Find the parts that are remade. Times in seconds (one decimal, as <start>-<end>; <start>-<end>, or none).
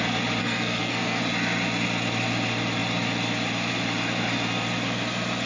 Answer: 0.4-1.2